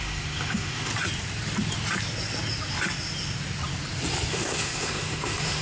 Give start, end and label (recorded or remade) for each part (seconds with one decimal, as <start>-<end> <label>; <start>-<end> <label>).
0.0-0.9 remade; 0.9-4.3 recorded; 4.3-5.6 remade